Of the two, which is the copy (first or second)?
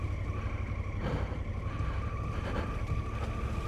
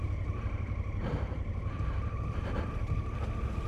second